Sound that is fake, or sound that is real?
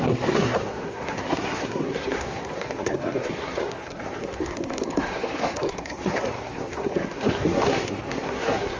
fake